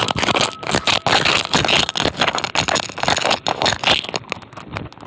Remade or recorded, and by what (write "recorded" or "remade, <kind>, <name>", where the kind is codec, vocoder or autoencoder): recorded